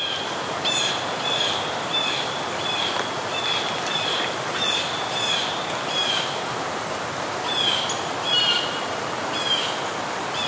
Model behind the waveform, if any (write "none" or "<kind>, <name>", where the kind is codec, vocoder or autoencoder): vocoder, BigVGAN v2